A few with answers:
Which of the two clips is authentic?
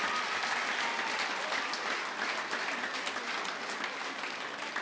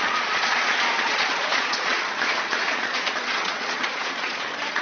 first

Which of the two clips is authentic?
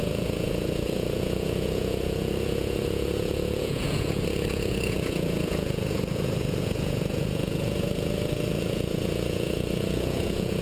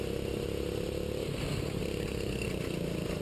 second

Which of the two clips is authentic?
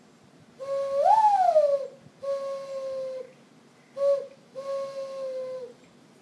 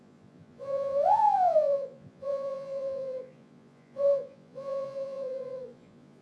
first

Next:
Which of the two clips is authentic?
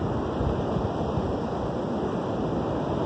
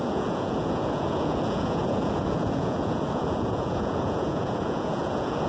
first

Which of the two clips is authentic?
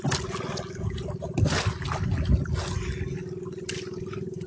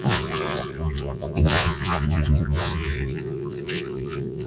first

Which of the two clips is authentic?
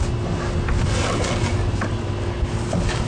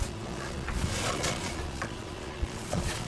first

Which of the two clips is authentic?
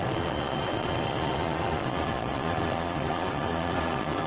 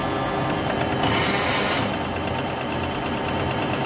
second